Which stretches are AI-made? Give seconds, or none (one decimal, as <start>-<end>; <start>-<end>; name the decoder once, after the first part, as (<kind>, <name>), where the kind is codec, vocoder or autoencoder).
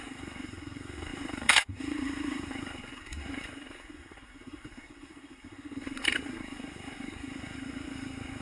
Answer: 0.0-8.4 (codec, SNAC)